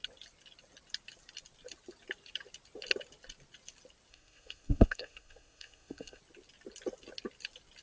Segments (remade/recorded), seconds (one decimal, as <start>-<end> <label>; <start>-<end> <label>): 0.0-4.1 recorded; 4.1-6.2 remade; 6.2-7.8 recorded